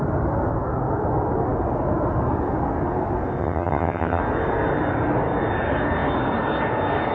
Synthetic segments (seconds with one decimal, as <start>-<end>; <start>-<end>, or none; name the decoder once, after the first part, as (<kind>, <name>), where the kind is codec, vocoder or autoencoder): 3.4-4.2 (vocoder, HiFi-GAN)